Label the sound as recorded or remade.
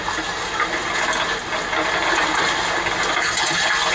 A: recorded